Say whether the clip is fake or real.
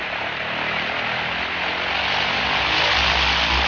real